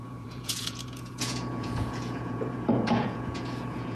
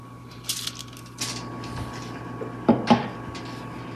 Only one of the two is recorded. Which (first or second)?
second